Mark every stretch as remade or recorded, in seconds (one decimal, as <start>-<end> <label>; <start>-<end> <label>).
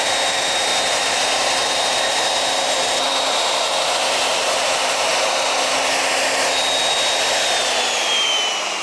0.0-0.7 remade; 0.7-1.6 recorded; 1.6-5.1 remade; 5.1-7.6 recorded; 7.6-8.8 remade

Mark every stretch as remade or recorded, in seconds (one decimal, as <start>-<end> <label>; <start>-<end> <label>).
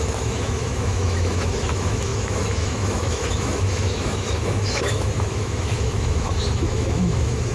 0.0-7.5 remade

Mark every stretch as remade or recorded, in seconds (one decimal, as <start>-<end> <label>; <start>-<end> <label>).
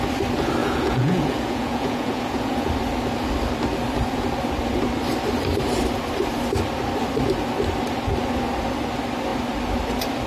0.0-0.6 recorded; 0.6-2.7 remade; 2.7-10.3 recorded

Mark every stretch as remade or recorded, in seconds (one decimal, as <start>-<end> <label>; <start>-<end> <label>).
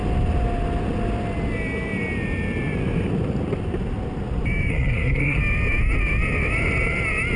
0.0-4.7 recorded; 4.7-5.4 remade; 5.4-7.4 recorded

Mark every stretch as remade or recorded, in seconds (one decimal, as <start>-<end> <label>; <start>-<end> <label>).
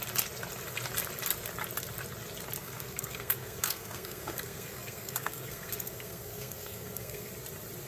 0.0-2.6 recorded; 2.6-7.3 remade; 7.3-7.9 recorded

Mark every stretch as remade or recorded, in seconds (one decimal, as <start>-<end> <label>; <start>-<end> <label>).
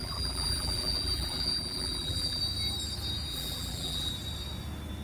0.0-2.4 remade; 2.4-3.3 recorded; 3.3-4.1 remade; 4.1-5.0 recorded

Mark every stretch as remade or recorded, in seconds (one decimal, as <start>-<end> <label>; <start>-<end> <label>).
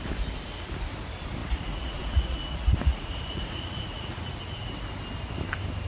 0.0-1.4 recorded; 1.4-4.4 remade; 4.4-5.9 recorded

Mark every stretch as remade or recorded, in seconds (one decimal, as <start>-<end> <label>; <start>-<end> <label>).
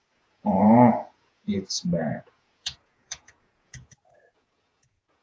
0.0-5.2 remade